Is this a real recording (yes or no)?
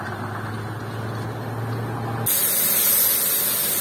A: yes